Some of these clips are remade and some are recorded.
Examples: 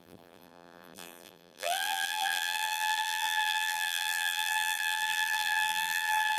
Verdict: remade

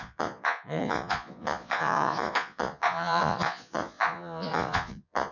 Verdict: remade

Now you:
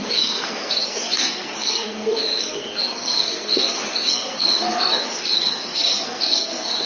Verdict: remade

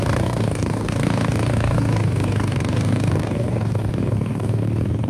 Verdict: remade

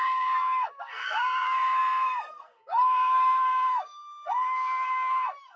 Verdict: remade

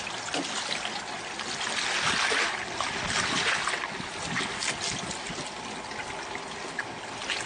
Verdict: recorded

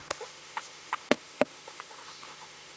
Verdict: remade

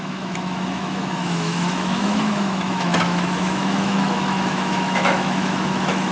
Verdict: remade